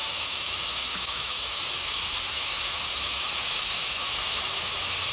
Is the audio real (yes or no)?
no